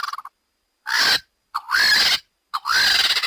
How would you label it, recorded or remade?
recorded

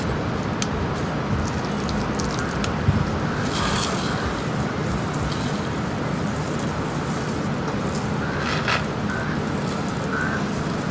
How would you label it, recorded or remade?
recorded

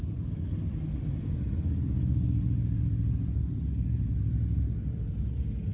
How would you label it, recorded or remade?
recorded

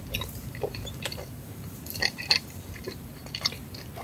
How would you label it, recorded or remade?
remade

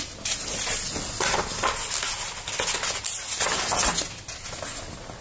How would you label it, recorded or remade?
recorded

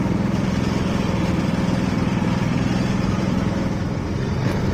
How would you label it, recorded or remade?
remade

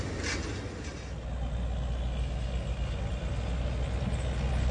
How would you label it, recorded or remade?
recorded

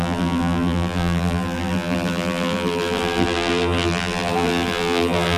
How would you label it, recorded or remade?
remade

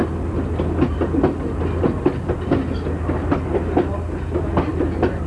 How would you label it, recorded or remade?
recorded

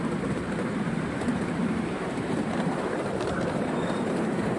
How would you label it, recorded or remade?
remade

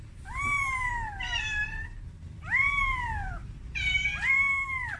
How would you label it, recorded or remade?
remade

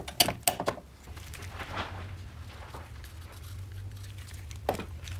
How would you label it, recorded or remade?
recorded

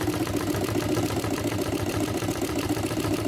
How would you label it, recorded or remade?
recorded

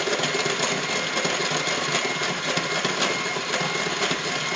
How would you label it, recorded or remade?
recorded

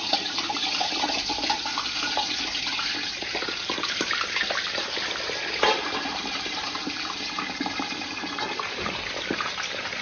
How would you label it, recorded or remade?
remade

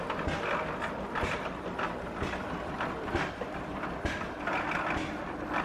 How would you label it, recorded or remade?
recorded